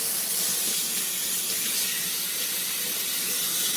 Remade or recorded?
recorded